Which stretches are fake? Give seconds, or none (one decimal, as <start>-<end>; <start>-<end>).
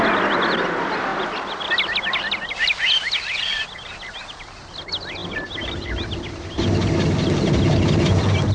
none